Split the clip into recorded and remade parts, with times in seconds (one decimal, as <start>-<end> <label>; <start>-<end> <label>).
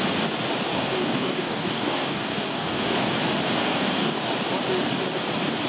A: 0.0-0.7 recorded; 0.7-3.1 remade; 3.1-3.6 recorded; 3.6-4.3 remade; 4.3-5.7 recorded